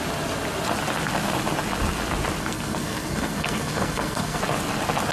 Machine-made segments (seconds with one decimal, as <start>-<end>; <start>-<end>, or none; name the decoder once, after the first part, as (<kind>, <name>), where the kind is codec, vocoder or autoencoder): 2.4-4.4 (codec, SNAC)